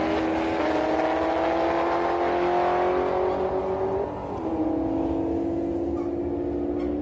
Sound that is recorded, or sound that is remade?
recorded